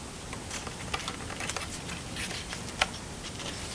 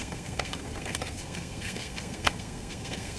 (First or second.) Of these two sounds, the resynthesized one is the second